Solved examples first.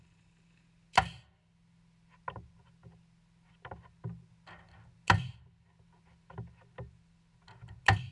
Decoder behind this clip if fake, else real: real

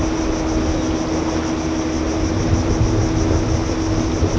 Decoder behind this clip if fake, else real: real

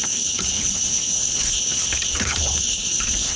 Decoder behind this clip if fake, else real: fake, codec, HILCodec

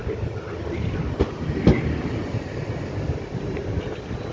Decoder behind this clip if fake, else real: real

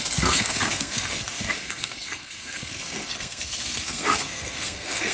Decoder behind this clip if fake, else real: fake, codec, SNAC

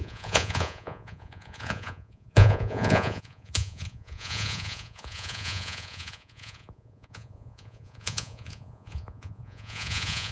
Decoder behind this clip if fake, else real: fake, vocoder, Vocos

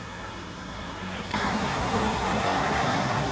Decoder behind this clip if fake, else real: fake, codec, SNAC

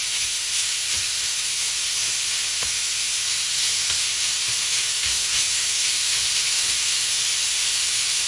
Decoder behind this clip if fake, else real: fake, autoencoder, DAC-VAE